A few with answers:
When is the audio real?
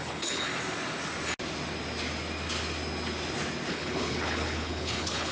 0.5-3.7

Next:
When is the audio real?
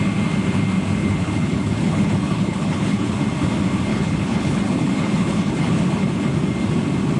0.0-1.0; 3.2-3.9; 6.3-7.2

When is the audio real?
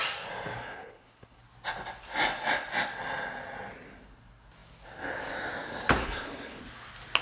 0.0-0.6; 1.4-6.0; 6.6-7.2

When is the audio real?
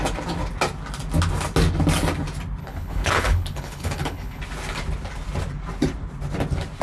0.0-2.6; 4.4-6.8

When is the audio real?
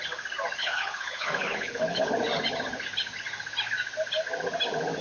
0.0-0.6; 2.1-5.0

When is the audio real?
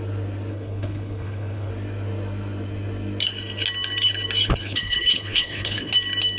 0.0-0.5; 1.7-4.6; 5.9-6.4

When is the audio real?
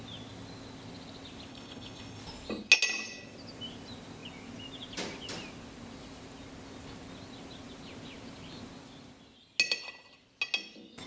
0.0-1.5; 2.2-11.1